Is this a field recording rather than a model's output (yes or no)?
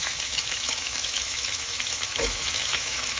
no